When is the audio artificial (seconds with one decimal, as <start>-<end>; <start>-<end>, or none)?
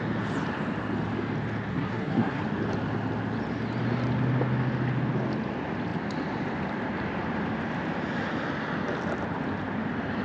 1.7-2.4